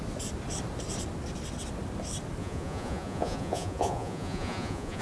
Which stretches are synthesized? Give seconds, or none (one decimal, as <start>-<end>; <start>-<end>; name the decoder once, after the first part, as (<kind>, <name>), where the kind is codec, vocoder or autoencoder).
2.4-5.0 (vocoder, Vocos)